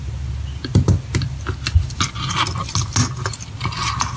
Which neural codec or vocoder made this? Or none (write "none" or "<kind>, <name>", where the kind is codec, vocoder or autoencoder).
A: none